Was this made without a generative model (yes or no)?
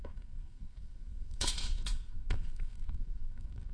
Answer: no